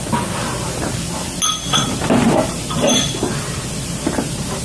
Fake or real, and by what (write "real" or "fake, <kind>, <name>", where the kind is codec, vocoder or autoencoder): real